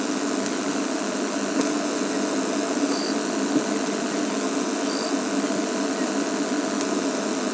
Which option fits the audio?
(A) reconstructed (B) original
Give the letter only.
A